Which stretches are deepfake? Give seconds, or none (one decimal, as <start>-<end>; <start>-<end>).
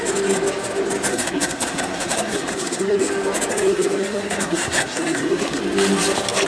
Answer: 1.1-3.1; 3.5-5.6